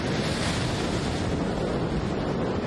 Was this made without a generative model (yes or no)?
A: yes